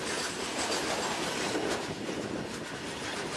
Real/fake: real